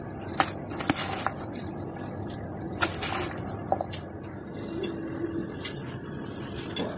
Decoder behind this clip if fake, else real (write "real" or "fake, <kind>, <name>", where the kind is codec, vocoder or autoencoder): real